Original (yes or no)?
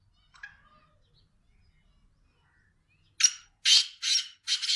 yes